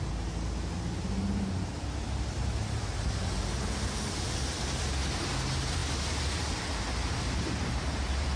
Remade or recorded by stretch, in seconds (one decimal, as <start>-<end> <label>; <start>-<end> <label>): 0.0-8.4 recorded